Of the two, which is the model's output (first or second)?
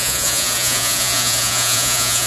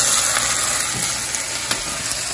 first